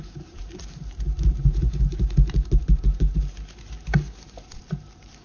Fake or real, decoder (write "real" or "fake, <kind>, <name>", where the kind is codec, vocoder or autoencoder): fake, vocoder, BigVGAN v2